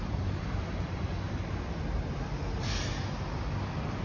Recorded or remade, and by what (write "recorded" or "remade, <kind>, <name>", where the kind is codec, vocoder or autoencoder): recorded